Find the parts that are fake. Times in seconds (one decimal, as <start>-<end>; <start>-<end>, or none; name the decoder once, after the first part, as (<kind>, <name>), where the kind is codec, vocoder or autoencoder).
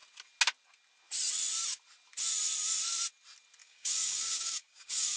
3.6-5.2 (codec, DAC)